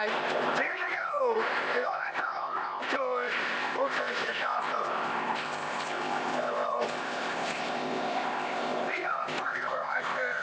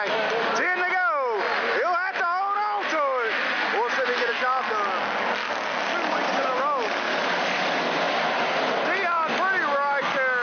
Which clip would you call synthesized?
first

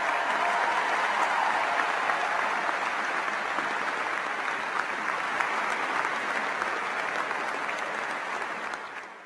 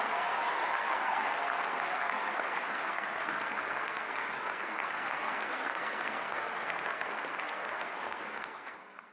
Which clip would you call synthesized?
second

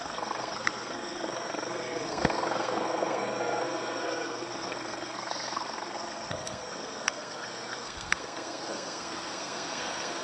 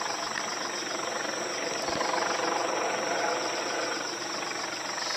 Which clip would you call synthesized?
first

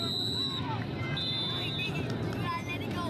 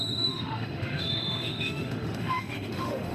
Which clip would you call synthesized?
second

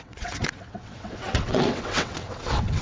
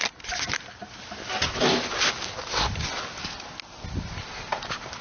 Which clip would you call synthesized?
first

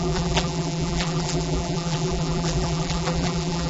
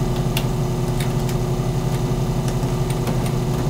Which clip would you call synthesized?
first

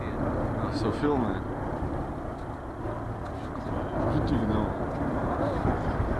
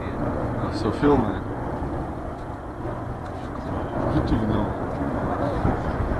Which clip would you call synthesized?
second